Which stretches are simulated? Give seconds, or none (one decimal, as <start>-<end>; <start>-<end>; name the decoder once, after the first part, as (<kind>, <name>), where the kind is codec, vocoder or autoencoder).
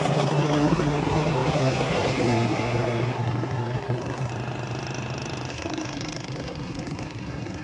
0.0-4.3 (codec, SNAC); 5.5-7.6